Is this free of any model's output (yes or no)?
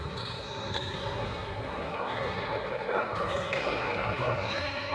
no